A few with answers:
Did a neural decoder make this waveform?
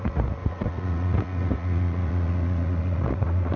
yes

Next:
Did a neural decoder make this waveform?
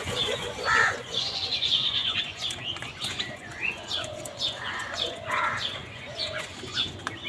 yes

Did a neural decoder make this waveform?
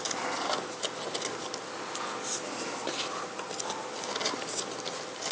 no